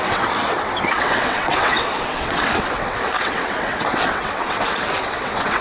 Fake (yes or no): yes